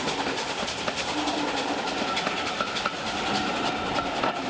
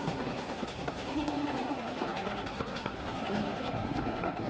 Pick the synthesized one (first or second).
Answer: second